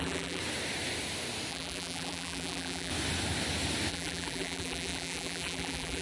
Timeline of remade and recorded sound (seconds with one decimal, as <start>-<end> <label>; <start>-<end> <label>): 0.0-0.4 remade; 0.4-1.5 recorded; 1.5-2.9 remade; 2.9-3.9 recorded; 3.9-6.0 remade